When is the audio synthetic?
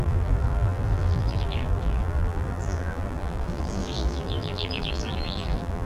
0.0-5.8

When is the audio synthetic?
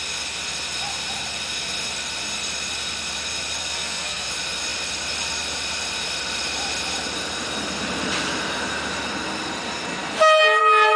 3.6-4.3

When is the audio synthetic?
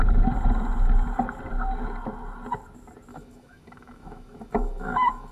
3.1-5.3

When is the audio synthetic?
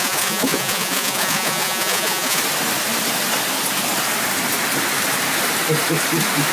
0.0-2.4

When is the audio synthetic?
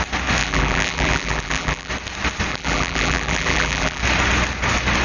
0.4-1.9; 2.5-4.0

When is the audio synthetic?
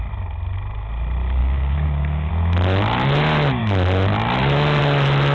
1.4-2.3